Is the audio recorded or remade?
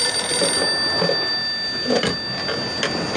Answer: recorded